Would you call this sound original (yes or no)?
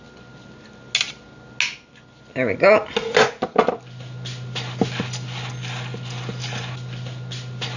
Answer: yes